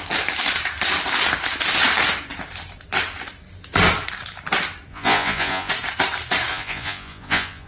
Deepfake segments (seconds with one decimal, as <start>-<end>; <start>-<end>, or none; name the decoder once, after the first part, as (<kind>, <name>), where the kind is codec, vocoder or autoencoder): 4.9-5.7 (vocoder, Vocos); 6.5-7.7

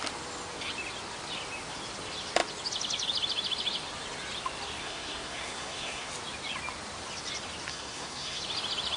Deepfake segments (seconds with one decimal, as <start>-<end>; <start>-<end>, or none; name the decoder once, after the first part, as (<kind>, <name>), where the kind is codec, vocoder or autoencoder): 4.8-6.1 (codec, SNAC); 7.7-8.4

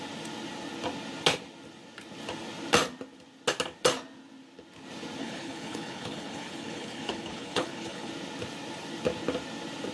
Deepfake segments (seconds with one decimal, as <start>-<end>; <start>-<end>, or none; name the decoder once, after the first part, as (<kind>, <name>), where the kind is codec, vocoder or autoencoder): 5.2-8.1 (codec, HILCodec)

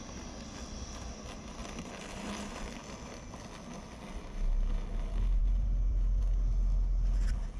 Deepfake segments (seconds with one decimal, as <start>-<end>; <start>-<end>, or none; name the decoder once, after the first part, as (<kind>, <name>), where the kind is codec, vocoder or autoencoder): 1.6-2.8 (vocoder, BigVGAN v2); 5.4-6.2

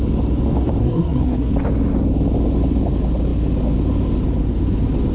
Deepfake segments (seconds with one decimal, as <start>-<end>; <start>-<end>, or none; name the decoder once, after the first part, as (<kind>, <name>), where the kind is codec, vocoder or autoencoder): 0.8-1.5 (codec, SNAC)